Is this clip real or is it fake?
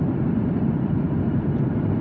fake